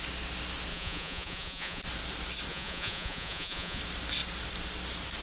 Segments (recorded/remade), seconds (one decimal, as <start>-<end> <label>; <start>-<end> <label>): 0.0-0.7 recorded; 0.7-1.8 remade; 1.8-2.5 recorded; 2.5-3.8 remade; 3.8-5.2 recorded